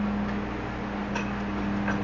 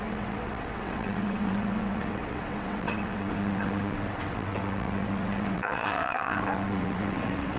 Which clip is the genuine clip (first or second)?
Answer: first